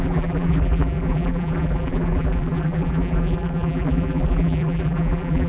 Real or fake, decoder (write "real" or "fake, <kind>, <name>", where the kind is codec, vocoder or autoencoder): fake, vocoder, BigVGAN v2